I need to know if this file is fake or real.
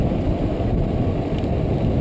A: real